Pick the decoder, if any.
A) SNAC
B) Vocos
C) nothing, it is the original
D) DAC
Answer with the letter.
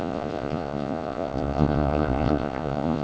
B